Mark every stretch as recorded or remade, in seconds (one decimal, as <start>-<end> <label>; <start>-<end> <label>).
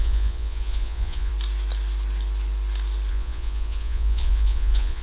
0.0-1.3 remade; 1.3-3.1 recorded; 3.1-5.0 remade